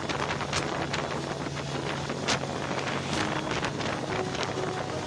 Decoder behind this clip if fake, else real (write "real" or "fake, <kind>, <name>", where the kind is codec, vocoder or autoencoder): real